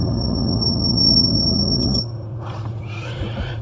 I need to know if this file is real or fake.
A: fake